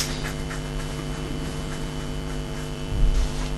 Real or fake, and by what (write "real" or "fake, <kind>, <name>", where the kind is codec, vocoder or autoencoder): fake, vocoder, BigVGAN v2